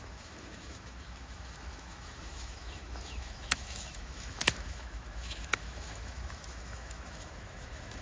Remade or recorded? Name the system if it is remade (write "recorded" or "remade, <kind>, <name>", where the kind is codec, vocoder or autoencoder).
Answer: remade, autoencoder, DAC-VAE